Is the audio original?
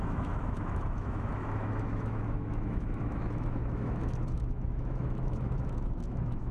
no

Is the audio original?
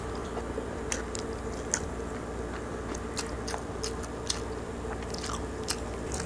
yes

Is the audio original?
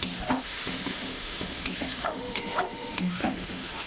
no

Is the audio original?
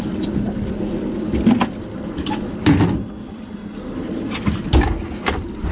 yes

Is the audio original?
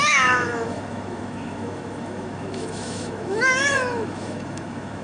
no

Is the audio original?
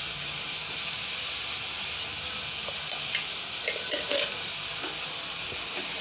yes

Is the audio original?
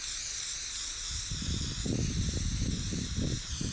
yes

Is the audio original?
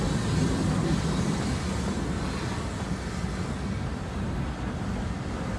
yes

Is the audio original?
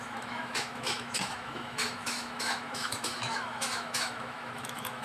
no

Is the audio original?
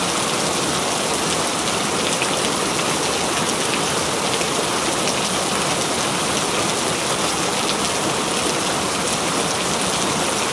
yes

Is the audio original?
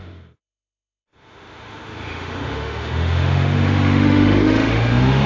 no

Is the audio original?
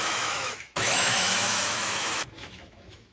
no